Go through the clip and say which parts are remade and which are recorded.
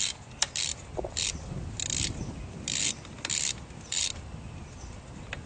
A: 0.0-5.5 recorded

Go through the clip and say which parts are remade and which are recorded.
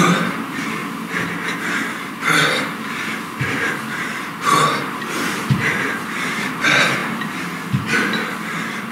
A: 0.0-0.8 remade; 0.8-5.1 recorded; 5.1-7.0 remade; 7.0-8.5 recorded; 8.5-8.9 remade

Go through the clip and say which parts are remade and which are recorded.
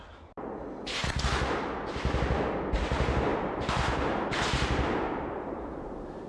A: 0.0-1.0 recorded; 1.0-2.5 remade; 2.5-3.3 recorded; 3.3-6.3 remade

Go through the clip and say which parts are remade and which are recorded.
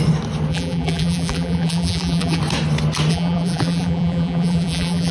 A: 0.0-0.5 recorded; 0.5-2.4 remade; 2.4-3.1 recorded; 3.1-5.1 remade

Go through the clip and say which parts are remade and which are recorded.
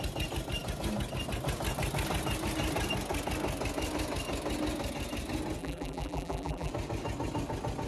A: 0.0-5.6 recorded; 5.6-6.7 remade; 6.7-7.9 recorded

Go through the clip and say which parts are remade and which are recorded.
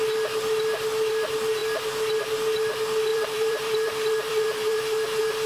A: 0.0-3.1 recorded; 3.1-4.8 remade; 4.8-5.5 recorded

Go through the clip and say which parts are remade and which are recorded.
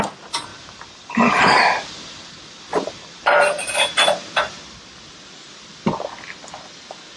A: 0.0-0.5 recorded; 0.5-4.8 remade; 4.8-7.2 recorded